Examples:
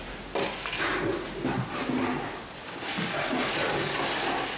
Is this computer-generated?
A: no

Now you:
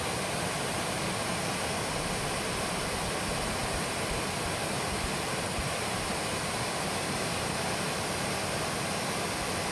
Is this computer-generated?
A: no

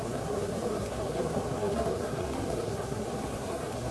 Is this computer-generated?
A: yes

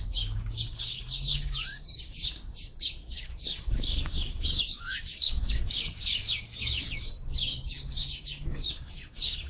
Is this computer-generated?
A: yes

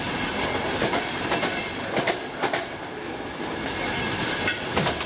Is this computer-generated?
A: no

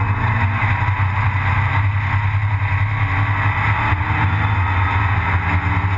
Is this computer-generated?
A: no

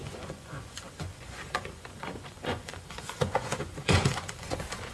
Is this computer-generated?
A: yes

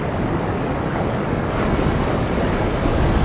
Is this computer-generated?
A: yes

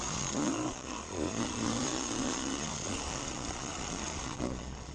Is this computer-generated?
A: yes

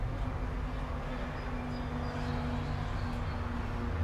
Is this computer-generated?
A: no